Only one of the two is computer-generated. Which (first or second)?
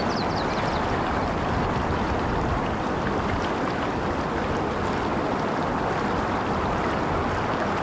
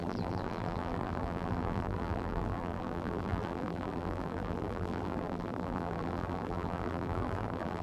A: second